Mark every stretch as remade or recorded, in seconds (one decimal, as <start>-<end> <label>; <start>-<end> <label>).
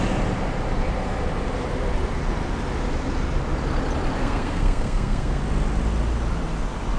0.0-4.2 recorded; 4.2-5.4 remade; 5.4-7.0 recorded